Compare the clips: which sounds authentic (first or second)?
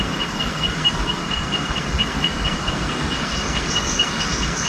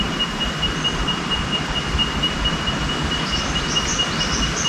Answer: second